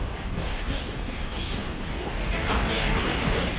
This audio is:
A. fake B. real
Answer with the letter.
A